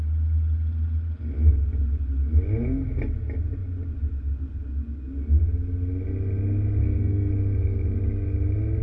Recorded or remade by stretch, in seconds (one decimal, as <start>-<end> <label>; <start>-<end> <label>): 0.0-6.8 recorded; 6.8-7.3 remade; 7.3-8.8 recorded